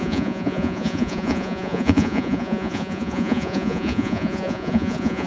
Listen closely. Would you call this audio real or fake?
fake